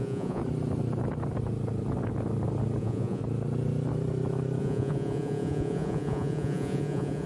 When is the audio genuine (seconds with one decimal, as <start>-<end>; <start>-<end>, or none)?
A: 0.4-2.8; 3.2-4.6